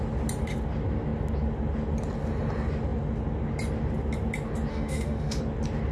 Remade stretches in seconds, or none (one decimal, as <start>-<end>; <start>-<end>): 4.7-5.4